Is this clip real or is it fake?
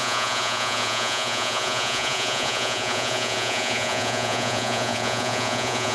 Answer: fake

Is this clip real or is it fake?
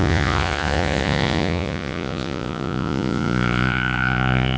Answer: fake